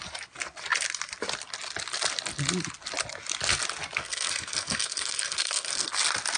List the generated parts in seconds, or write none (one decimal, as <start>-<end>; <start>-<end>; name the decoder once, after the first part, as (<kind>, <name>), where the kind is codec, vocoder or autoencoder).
4.0-5.9 (codec, SNAC)